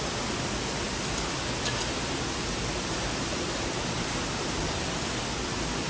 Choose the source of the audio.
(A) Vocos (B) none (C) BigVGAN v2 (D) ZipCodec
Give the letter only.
B